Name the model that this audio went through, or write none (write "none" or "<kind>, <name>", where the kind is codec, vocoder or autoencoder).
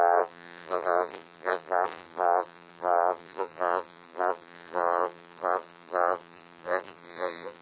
vocoder, BigVGAN v2